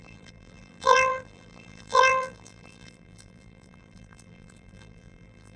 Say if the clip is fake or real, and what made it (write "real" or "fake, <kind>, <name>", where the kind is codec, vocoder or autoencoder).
fake, vocoder, BigVGAN v2